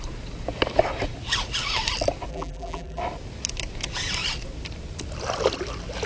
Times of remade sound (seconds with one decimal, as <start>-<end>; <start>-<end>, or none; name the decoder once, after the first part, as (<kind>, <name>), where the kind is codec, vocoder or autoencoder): 2.3-3.0 (vocoder, BigVGAN v2)